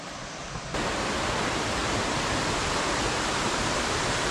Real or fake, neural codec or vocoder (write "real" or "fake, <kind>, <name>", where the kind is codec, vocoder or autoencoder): real